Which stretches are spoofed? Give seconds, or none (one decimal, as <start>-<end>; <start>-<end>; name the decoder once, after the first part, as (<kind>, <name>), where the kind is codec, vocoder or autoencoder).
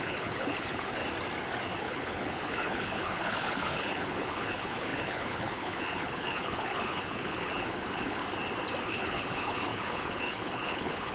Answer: 0.0-1.0 (codec, HILCodec); 1.8-8.2; 8.9-11.1